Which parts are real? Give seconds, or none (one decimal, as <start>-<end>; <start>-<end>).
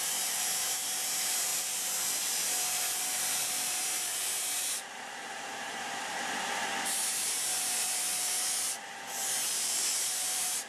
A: 1.5-3.0